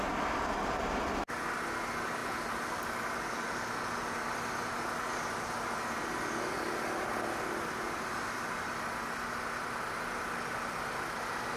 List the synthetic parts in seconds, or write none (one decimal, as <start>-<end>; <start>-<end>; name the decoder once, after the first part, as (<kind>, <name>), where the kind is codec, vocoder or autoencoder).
none